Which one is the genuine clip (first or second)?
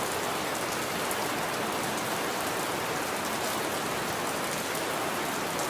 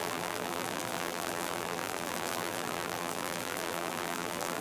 first